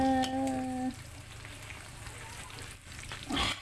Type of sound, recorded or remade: recorded